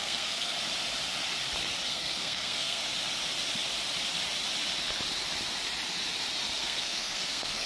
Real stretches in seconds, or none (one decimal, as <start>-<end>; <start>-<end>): 0.5-1.9; 2.8-6.6